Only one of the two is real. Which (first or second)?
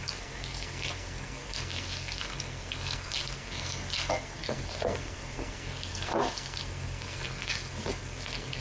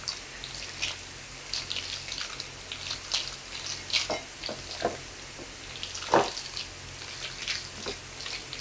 second